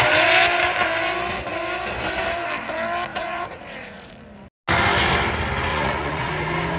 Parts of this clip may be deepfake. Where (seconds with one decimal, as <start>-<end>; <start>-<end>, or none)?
3.1-4.1; 5.7-6.3